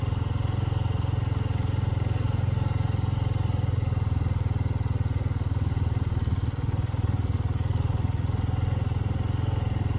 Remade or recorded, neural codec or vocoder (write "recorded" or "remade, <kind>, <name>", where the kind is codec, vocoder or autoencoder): recorded